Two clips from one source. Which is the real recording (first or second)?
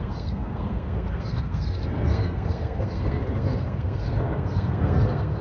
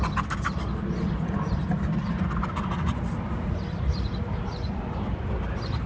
second